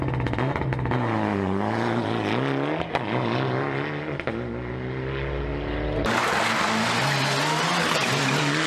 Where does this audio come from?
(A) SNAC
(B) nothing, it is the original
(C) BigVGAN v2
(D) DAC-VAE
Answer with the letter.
B